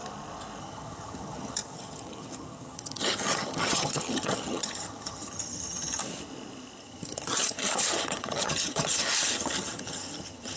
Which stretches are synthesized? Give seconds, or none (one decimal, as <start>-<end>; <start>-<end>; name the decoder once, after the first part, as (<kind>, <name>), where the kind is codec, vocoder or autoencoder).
0.6-6.0 (vocoder, HiFi-GAN); 6.8-10.6

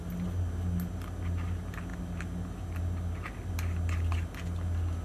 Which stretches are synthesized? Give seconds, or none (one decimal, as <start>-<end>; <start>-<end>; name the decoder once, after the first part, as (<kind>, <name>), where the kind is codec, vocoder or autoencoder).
none

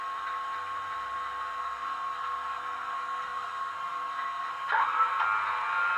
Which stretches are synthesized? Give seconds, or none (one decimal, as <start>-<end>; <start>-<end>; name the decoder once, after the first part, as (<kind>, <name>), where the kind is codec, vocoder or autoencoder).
1.6-5.2 (codec, SNAC)